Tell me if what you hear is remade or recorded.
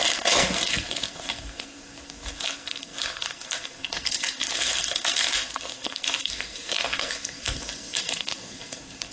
remade